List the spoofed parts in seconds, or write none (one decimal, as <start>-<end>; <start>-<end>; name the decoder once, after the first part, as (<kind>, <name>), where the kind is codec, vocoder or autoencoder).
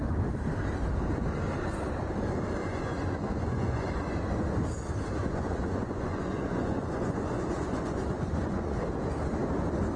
2.6-4.0 (vocoder, Vocos); 5.2-8.8